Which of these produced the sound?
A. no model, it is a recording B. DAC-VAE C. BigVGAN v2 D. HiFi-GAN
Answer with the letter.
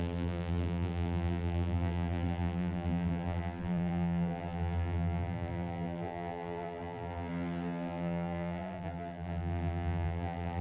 C